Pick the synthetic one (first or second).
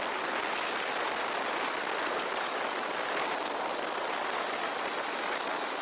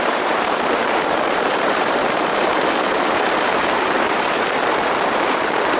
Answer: second